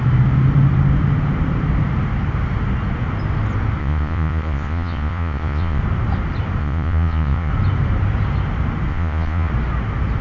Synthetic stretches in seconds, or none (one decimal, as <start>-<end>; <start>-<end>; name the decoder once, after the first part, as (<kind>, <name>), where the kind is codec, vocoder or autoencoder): 3.8-5.8 (vocoder, Vocos); 6.6-7.5; 8.9-9.5